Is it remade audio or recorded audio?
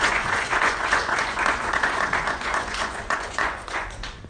remade